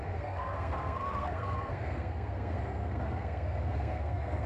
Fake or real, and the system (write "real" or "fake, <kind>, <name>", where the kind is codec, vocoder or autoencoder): fake, codec, SNAC